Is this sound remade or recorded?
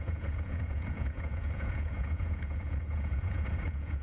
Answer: remade